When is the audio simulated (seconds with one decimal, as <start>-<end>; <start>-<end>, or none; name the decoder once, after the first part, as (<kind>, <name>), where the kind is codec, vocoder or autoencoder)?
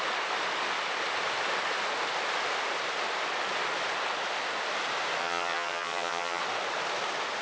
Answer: 5.2-6.4 (vocoder, HiFi-GAN)